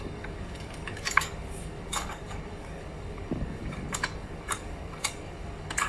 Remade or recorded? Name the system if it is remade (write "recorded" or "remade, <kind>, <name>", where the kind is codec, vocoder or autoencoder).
remade, codec, DAC